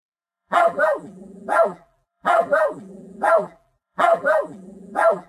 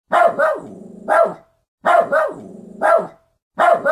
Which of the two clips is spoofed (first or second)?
first